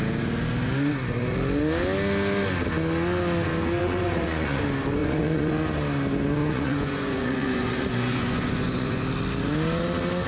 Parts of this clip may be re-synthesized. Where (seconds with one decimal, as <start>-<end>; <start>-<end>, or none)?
3.8-4.6; 5.0-5.5; 6.4-9.0